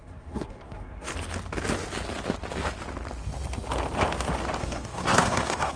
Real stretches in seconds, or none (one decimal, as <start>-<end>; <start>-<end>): 1.1-4.6